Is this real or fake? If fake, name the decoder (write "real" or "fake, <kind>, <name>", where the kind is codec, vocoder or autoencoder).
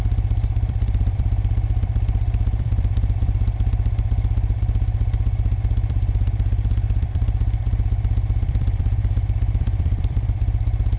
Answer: fake, vocoder, BigVGAN v2